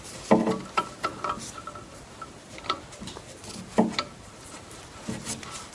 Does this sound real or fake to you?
real